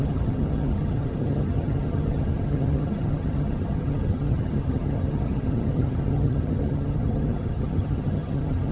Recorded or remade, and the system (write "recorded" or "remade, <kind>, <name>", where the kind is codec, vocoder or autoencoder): remade, vocoder, HiFi-GAN